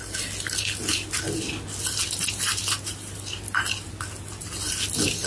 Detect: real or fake real